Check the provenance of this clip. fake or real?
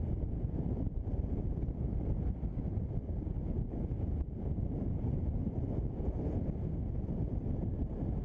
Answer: real